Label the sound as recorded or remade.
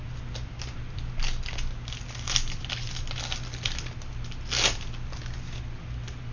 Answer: recorded